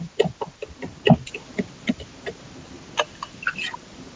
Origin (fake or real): real